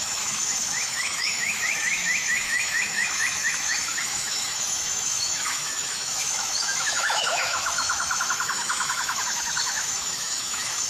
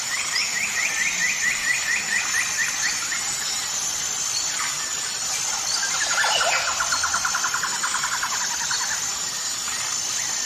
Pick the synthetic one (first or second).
first